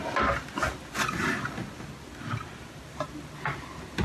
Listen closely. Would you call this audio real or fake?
real